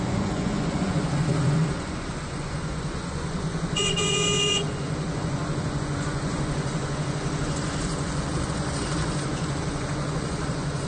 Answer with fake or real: fake